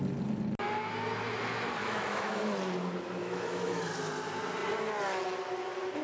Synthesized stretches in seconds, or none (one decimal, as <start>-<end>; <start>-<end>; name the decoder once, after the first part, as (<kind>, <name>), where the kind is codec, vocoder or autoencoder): 1.8-2.5 (autoencoder, DAC-VAE); 3.2-3.8